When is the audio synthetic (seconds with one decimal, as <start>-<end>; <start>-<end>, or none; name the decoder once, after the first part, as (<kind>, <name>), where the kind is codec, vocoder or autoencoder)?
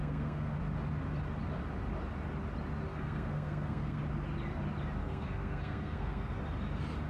0.0-0.6 (codec, SNAC); 2.9-4.0; 5.0-6.3